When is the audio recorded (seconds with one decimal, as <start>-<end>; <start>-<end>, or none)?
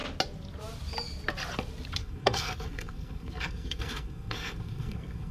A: 0.0-2.0